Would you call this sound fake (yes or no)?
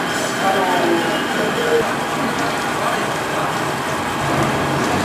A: no